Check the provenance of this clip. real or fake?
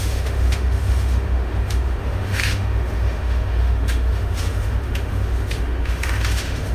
fake